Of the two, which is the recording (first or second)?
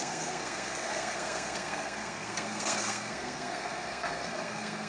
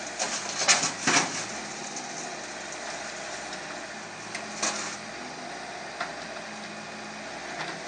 second